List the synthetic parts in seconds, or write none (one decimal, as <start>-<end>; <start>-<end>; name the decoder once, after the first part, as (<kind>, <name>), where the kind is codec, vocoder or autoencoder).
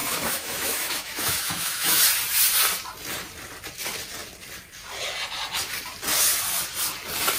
0.0-2.0 (autoencoder, DAC-VAE)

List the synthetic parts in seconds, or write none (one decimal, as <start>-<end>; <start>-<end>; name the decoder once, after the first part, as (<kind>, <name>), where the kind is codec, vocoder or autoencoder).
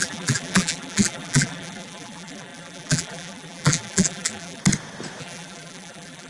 0.0-4.6 (vocoder, BigVGAN v2); 5.2-6.3